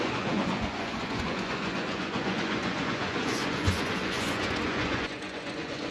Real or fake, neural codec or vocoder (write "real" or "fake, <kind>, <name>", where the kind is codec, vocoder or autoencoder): fake, vocoder, Vocos